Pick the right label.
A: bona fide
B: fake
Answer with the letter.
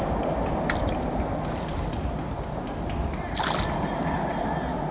A